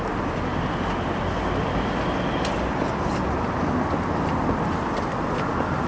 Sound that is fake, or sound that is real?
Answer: real